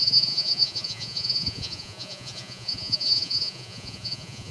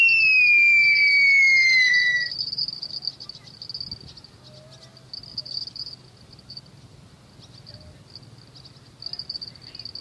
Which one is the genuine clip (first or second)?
second